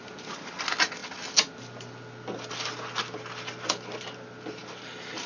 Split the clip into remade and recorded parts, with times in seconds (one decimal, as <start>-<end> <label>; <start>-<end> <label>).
0.0-5.3 recorded